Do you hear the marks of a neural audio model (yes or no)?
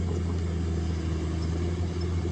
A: no